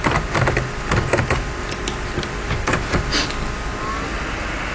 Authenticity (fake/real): real